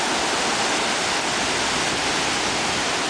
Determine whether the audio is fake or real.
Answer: real